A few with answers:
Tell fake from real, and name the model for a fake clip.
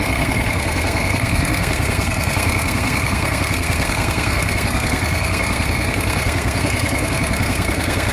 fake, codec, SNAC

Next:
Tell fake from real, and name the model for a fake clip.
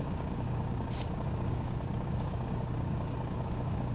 fake, codec, DAC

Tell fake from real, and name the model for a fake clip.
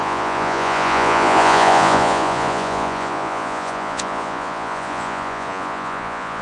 fake, vocoder, Vocos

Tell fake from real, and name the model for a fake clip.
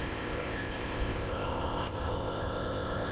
fake, codec, ZipCodec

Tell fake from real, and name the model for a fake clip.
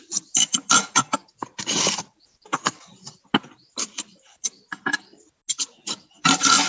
real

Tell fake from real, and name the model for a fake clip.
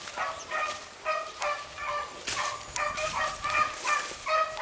real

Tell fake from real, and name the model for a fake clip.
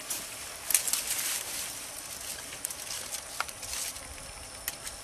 real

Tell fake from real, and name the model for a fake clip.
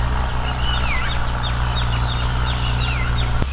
real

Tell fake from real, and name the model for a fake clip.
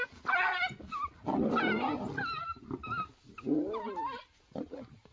real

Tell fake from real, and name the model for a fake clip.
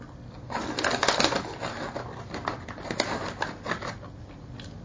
real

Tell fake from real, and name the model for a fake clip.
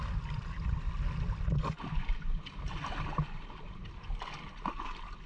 real